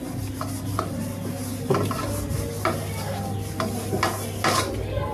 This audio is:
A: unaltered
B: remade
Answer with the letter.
A